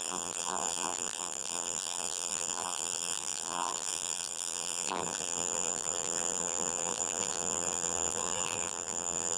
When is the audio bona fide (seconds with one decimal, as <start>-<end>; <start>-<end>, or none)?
none